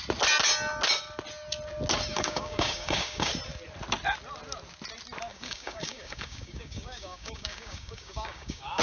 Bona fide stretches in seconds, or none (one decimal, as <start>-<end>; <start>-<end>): 0.0-2.1; 3.3-5.3